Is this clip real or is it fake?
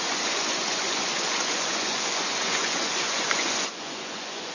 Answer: fake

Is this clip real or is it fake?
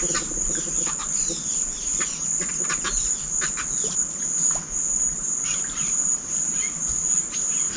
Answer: real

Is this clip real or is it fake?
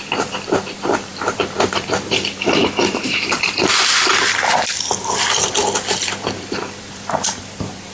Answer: fake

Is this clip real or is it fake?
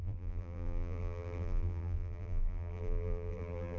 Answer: fake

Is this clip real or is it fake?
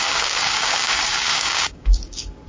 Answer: fake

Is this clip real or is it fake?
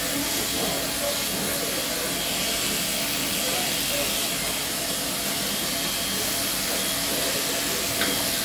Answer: real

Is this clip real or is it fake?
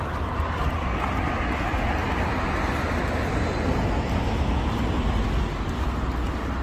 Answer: real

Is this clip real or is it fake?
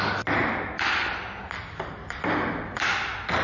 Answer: real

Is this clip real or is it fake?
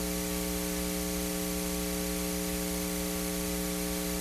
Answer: real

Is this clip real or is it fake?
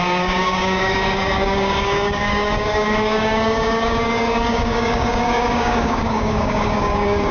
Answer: fake